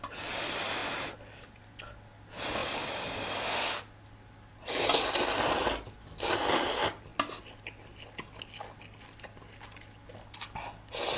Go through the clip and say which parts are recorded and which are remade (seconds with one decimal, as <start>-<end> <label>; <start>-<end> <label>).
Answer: 0.0-11.2 recorded